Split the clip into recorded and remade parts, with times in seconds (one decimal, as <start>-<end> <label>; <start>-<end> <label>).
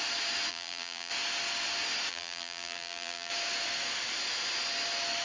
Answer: 0.0-0.5 recorded; 0.5-1.1 remade; 1.1-2.1 recorded; 2.1-3.3 remade; 3.3-5.2 recorded